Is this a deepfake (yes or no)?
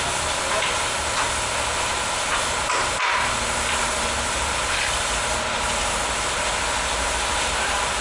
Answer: no